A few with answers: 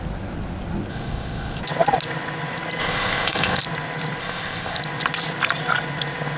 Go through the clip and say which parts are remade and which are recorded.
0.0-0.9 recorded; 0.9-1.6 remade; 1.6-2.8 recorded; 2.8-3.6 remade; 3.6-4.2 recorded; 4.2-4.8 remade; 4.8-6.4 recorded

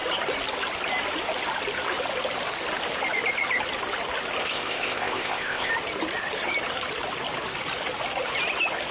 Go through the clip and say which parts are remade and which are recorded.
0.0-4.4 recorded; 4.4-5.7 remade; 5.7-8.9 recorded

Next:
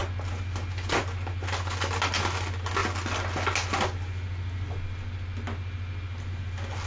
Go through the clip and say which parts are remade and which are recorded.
0.0-6.9 recorded